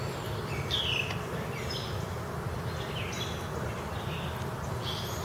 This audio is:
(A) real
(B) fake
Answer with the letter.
B